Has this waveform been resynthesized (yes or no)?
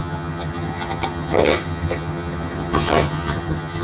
yes